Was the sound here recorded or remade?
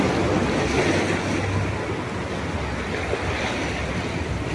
recorded